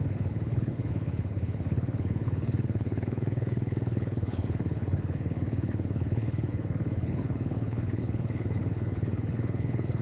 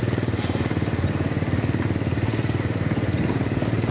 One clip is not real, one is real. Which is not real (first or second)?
first